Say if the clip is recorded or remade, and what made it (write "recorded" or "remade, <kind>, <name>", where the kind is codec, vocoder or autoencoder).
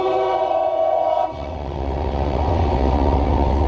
remade, vocoder, WaveNeXt